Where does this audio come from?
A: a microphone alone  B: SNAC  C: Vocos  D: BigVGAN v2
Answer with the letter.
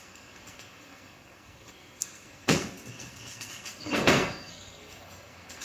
B